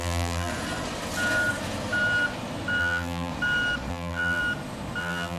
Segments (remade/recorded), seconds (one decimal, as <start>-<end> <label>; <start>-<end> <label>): 0.0-0.5 remade; 0.5-2.8 recorded; 2.8-3.3 remade; 3.3-3.9 recorded; 3.9-4.4 remade; 4.4-5.0 recorded; 5.0-5.4 remade